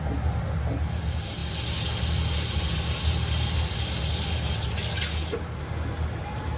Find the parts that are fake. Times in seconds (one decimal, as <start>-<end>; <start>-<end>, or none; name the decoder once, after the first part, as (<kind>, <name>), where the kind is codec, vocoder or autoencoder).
none